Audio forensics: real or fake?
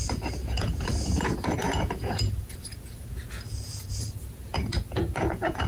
fake